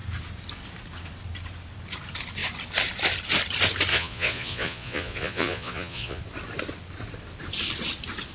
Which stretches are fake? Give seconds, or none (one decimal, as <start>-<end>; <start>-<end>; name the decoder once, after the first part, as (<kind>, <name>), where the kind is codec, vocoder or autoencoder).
3.9-6.2 (vocoder, Vocos)